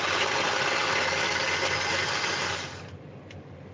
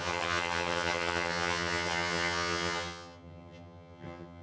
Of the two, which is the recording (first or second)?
first